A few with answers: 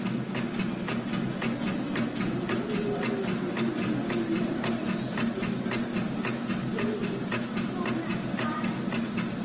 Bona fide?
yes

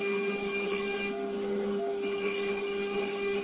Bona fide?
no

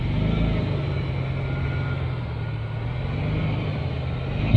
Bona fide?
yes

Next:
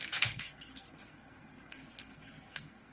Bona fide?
no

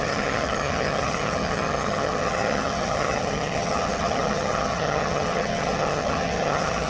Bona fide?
no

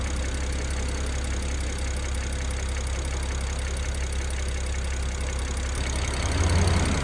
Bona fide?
yes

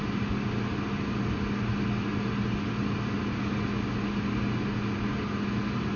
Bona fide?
yes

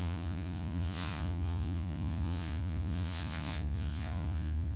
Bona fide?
no